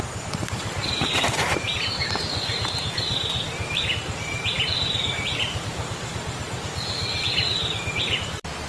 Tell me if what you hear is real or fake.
fake